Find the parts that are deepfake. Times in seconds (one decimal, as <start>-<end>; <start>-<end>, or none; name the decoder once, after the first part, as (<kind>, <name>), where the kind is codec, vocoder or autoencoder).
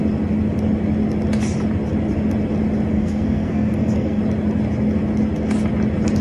2.9-4.2 (codec, SNAC)